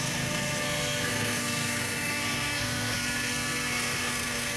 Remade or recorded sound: remade